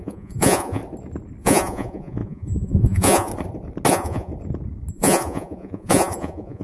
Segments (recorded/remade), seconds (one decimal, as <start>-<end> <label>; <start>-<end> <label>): 0.0-0.8 remade; 0.8-1.4 recorded; 1.4-3.3 remade; 3.3-3.9 recorded; 3.9-4.3 remade; 4.3-4.9 recorded; 4.9-6.6 remade